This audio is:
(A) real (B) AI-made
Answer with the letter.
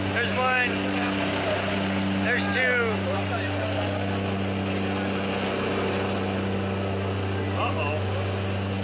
A